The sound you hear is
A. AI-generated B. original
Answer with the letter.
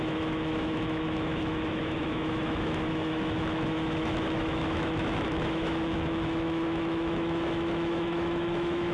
A